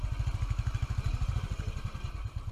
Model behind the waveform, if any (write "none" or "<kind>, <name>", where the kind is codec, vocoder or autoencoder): vocoder, BigVGAN v2